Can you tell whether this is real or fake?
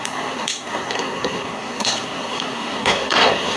fake